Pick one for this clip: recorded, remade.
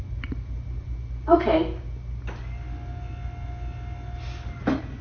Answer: recorded